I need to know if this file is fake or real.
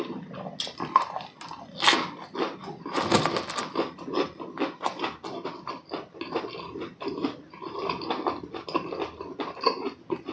real